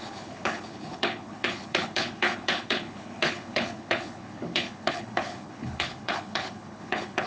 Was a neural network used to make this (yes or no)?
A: yes